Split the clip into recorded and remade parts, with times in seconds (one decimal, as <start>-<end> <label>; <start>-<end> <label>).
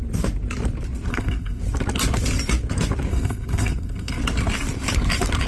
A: 0.0-1.1 recorded; 1.1-1.6 remade; 1.6-3.1 recorded; 3.1-4.2 remade; 4.2-5.5 recorded